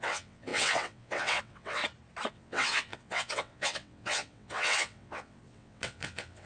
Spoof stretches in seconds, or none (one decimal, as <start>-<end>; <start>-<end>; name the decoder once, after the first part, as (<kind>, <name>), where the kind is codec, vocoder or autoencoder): 0.0-1.8 (vocoder, WaveNeXt); 2.3-6.5